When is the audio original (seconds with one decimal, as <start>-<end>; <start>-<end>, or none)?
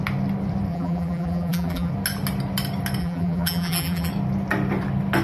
0.0-0.7; 1.9-3.0; 4.1-5.2